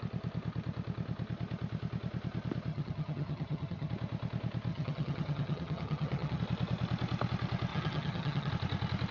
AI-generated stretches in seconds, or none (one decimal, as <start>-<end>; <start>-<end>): 2.7-3.9; 4.7-6.4; 7.7-8.5